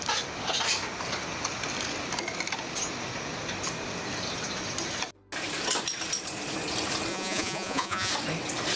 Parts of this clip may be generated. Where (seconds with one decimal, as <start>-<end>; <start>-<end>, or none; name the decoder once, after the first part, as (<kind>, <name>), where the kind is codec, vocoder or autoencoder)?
7.1-8.1 (vocoder, Vocos)